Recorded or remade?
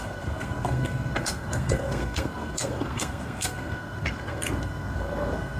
remade